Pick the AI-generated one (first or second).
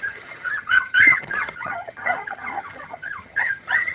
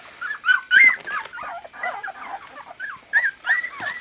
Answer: first